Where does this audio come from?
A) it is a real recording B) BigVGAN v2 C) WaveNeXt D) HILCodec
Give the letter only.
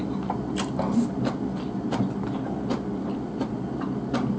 A